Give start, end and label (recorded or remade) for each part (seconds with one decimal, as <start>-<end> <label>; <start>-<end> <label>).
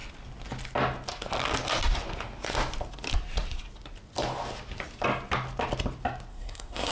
0.0-6.3 recorded; 6.3-6.9 remade